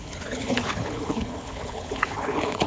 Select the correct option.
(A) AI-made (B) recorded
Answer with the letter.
A